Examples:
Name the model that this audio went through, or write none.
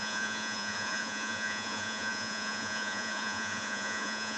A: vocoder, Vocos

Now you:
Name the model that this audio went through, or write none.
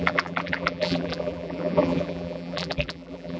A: vocoder, BigVGAN v2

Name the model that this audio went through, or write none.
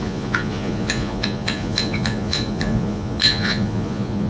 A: vocoder, Vocos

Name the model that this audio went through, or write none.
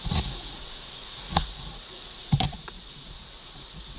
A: vocoder, Vocos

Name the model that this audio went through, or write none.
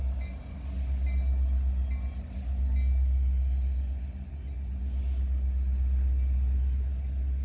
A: none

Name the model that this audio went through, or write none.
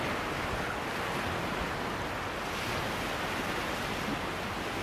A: none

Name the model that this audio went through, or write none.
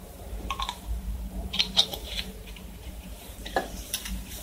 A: vocoder, BigVGAN v2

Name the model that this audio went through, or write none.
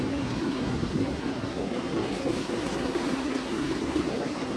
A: codec, SNAC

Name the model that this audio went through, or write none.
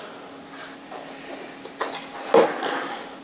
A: none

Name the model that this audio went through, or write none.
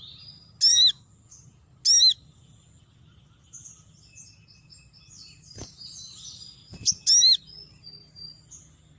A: none